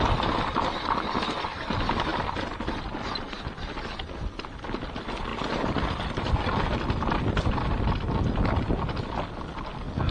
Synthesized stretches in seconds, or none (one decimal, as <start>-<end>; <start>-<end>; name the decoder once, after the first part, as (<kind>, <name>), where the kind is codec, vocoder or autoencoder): 2.1-4.8 (vocoder, BigVGAN v2)